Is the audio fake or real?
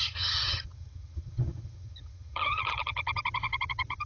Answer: fake